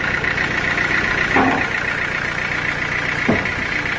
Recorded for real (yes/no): yes